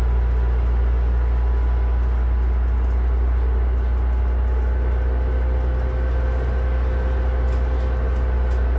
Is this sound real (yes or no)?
yes